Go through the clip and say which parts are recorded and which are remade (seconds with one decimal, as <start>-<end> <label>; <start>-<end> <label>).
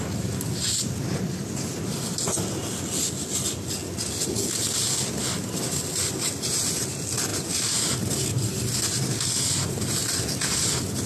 0.0-7.3 recorded; 7.3-7.8 remade; 7.8-11.1 recorded